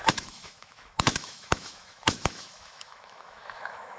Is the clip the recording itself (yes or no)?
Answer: no